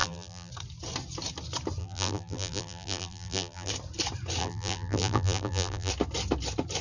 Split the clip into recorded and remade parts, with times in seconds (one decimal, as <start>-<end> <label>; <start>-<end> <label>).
0.0-0.5 remade; 0.5-1.8 recorded; 1.8-3.7 remade; 3.7-4.4 recorded; 4.4-5.9 remade; 5.9-6.8 recorded